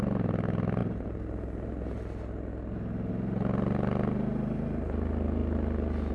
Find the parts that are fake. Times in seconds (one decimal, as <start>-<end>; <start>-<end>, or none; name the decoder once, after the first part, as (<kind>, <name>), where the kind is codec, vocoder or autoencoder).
none